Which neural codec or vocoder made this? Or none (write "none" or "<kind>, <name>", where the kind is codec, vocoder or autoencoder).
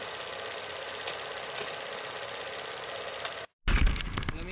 none